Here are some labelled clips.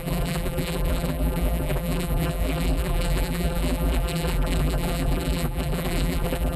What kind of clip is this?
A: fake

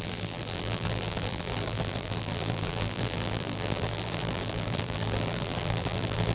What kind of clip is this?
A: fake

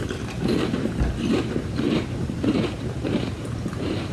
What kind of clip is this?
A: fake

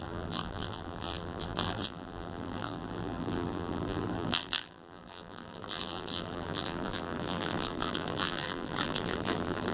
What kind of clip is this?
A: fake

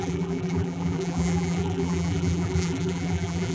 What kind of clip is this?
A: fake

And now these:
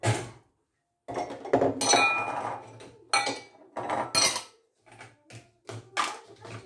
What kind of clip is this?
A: real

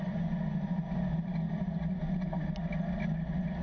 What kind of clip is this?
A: real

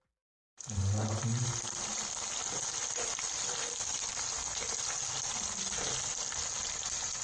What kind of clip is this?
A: real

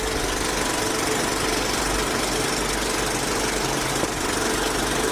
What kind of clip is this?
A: real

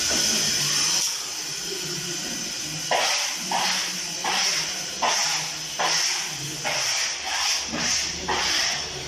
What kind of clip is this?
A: real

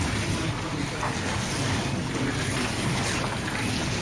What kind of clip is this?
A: real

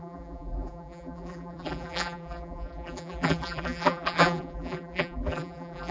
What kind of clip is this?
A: fake